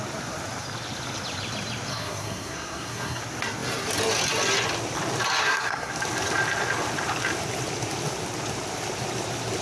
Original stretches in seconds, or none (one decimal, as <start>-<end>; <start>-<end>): 0.0-1.9; 3.2-5.4; 5.9-9.6